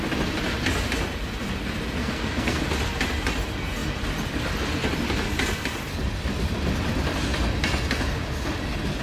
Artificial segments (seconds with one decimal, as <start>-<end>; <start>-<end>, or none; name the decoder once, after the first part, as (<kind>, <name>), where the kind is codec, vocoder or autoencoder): 2.0-2.6 (codec, SNAC)